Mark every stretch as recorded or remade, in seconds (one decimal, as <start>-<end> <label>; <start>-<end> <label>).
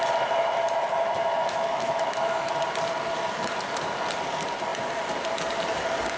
0.0-1.4 recorded; 1.4-2.5 remade; 2.5-6.2 recorded